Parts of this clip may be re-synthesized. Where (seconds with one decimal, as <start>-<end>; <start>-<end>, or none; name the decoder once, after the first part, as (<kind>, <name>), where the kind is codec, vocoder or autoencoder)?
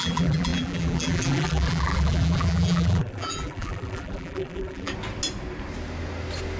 0.0-4.9 (vocoder, BigVGAN v2)